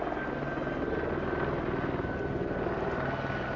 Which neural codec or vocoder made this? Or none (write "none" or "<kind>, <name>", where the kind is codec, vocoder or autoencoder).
none